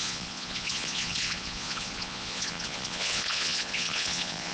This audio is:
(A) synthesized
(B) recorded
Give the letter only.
A